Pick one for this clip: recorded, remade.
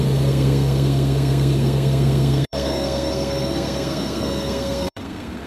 remade